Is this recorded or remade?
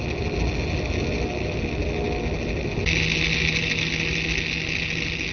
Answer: recorded